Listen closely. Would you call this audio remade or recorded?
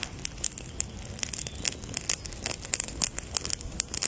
recorded